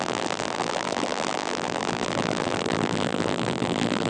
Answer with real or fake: fake